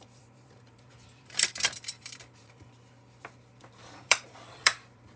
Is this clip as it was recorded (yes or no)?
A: no